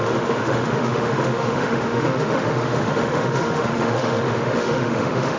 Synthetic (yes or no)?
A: yes